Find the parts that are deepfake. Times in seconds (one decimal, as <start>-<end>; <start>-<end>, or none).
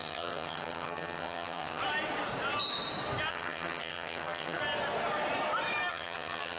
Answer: 0.0-1.8; 3.3-4.6; 5.9-6.6